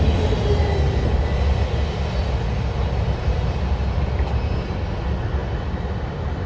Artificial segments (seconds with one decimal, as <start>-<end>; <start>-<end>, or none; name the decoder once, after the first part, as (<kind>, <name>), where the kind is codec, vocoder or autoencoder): none